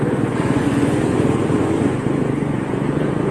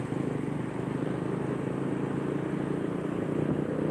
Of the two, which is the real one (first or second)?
second